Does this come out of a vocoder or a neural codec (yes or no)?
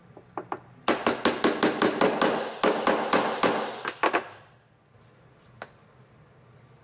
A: no